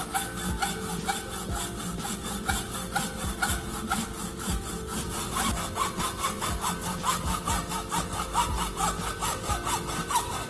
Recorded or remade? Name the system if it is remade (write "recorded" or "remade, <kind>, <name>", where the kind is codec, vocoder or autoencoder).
recorded